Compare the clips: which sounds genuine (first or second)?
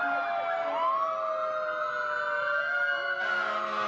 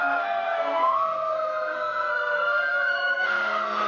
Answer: first